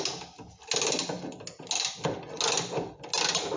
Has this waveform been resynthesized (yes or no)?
no